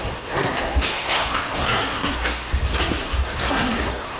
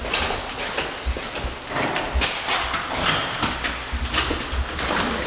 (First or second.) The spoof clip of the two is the first